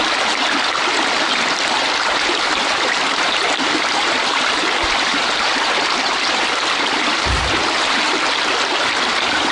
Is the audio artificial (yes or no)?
yes